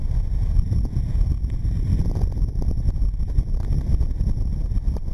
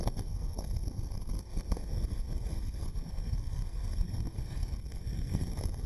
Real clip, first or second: first